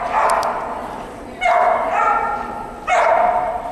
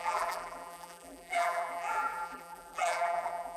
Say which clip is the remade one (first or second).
second